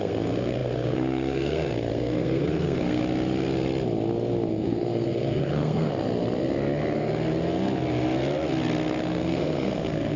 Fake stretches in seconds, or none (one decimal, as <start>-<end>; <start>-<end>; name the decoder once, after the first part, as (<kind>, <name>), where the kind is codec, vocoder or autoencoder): 0.0-3.0 (codec, SNAC); 4.5-5.9; 9.0-10.2